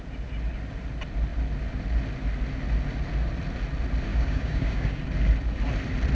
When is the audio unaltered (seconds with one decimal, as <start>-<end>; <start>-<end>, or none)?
0.0-4.1; 5.0-6.1